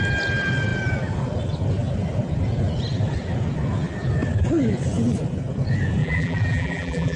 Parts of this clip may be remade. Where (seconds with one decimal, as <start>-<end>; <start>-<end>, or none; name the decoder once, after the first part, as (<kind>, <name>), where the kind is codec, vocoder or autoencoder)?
6.0-7.2 (vocoder, BigVGAN v2)

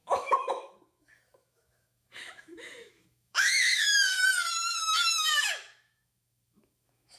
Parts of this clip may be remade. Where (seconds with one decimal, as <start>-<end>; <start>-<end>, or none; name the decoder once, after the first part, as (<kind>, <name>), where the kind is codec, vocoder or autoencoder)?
0.0-7.2 (autoencoder, DAC-VAE)

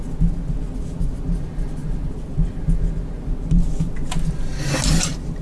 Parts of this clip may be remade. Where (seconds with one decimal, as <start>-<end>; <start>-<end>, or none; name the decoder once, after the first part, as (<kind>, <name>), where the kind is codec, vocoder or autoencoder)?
none